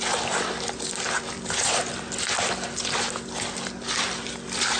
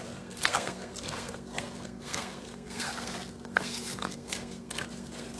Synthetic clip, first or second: second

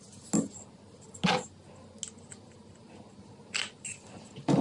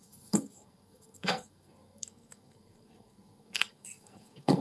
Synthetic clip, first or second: second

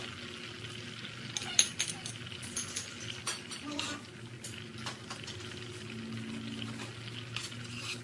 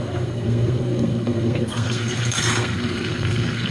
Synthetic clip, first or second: second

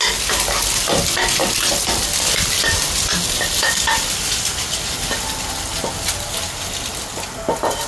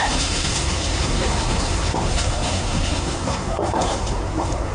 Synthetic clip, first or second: second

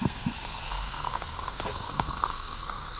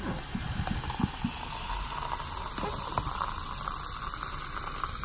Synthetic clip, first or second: first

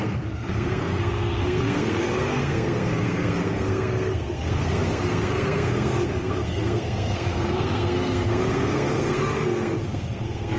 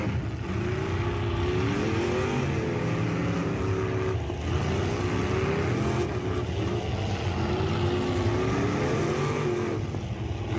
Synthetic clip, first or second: first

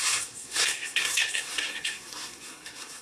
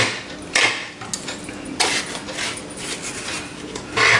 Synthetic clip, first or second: first